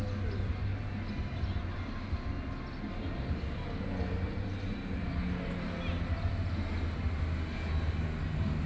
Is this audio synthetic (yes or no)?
no